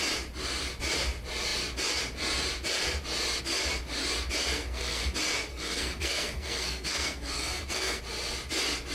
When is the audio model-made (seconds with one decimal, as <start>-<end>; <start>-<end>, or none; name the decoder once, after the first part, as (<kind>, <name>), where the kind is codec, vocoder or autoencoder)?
4.5-5.0 (codec, SNAC); 5.5-8.0